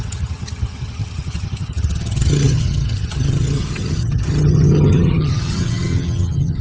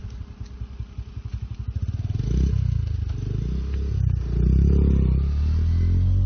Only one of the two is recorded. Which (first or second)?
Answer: second